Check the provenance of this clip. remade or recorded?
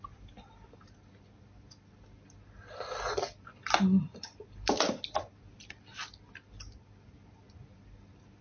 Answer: recorded